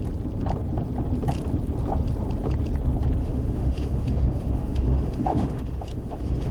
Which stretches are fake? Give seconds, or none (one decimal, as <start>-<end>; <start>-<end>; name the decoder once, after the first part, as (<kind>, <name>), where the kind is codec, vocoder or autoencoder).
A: 3.2-6.5 (autoencoder, DAC-VAE)